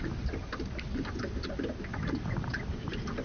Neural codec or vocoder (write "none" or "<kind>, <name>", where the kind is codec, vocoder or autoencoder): none